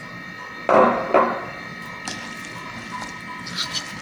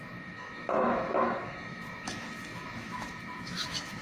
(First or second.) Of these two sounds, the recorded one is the first